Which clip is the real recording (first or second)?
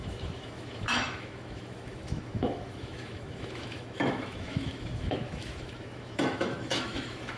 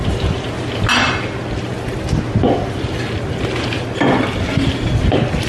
second